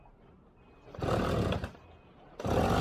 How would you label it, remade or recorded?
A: recorded